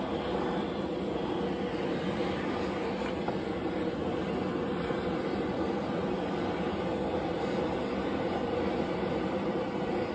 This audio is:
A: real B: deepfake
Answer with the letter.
A